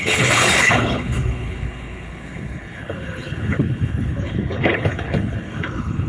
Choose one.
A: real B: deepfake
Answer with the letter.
B